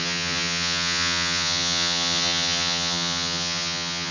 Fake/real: fake